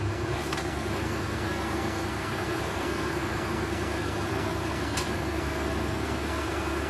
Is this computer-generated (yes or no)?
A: yes